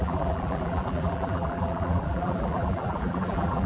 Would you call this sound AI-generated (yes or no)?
yes